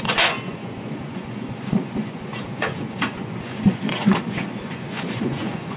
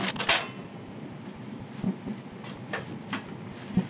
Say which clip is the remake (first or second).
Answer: first